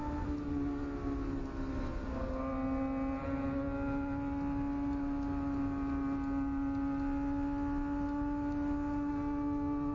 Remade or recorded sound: recorded